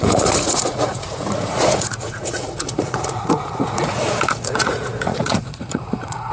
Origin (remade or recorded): remade